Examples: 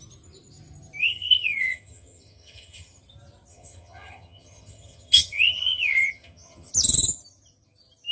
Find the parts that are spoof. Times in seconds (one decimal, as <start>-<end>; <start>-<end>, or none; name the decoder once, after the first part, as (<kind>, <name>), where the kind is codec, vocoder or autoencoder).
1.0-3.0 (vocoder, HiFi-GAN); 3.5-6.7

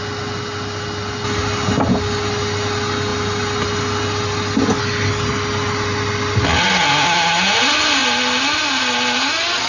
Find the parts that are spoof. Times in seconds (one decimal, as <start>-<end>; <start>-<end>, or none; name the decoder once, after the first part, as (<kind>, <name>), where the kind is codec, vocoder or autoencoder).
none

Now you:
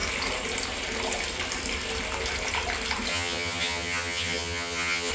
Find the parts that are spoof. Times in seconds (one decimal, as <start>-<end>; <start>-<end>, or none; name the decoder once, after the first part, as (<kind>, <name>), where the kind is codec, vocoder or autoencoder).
3.1-5.1 (vocoder, HiFi-GAN)

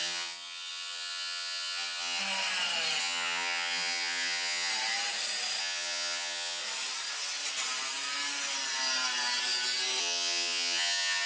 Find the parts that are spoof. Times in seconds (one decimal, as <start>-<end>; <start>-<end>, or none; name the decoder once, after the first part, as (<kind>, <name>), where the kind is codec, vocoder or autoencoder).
0.0-2.2 (vocoder, HiFi-GAN); 3.0-4.7; 5.6-6.6; 10.0-11.3

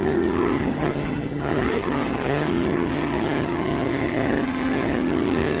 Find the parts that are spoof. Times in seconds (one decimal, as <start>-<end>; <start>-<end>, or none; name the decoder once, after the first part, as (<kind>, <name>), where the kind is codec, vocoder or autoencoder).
0.0-5.6 (vocoder, HiFi-GAN)

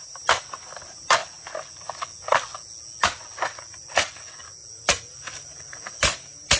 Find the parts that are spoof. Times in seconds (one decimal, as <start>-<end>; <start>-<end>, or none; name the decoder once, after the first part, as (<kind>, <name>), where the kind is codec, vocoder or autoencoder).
none